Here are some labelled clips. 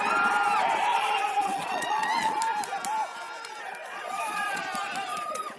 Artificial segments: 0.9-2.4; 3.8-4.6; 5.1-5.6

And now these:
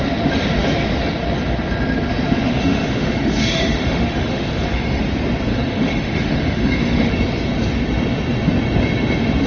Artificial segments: 2.5-5.0; 5.5-7.1